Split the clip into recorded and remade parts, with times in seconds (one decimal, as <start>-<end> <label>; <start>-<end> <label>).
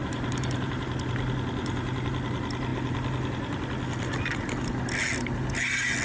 0.0-0.9 remade; 0.9-1.6 recorded; 1.6-2.1 remade; 2.1-6.0 recorded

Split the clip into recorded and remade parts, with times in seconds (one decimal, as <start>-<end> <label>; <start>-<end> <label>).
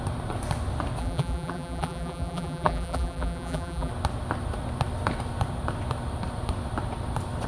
0.0-1.0 recorded; 1.0-3.9 remade; 3.9-7.5 recorded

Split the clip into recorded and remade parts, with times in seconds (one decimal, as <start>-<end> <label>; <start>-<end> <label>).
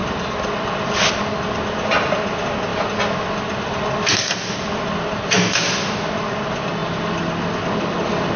0.0-8.4 recorded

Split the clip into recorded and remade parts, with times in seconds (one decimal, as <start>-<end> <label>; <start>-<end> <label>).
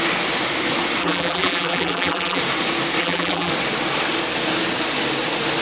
0.0-1.0 recorded; 1.0-2.4 remade; 2.4-3.0 recorded; 3.0-3.5 remade; 3.5-5.6 recorded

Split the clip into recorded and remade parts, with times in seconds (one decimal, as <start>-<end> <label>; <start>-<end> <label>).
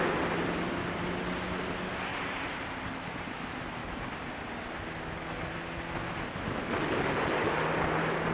0.0-2.1 recorded; 2.1-2.7 remade; 2.7-3.8 recorded; 3.8-4.4 remade; 4.4-8.3 recorded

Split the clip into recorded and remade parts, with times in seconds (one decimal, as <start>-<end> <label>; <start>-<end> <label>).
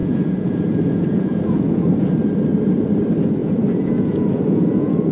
0.0-1.8 remade; 1.8-3.4 recorded; 3.4-5.1 remade